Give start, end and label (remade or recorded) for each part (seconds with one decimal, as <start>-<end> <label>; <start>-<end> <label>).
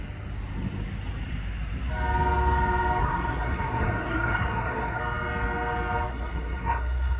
0.0-3.0 recorded; 3.0-5.0 remade; 5.0-6.1 recorded; 6.1-7.2 remade